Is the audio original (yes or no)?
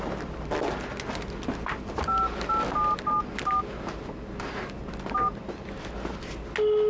yes